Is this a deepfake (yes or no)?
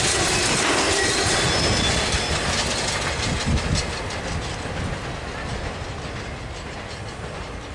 no